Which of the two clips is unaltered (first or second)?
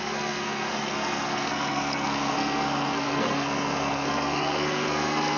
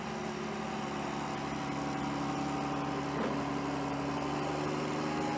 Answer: second